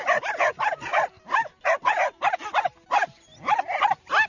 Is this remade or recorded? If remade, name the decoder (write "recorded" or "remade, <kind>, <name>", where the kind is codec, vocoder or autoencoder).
recorded